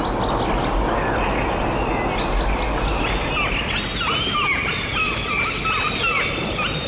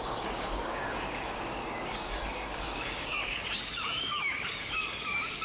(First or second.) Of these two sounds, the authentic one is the first